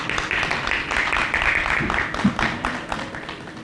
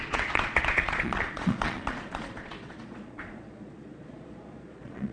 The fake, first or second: second